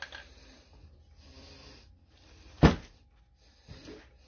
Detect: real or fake real